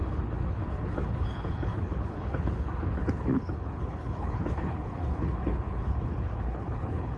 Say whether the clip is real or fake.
fake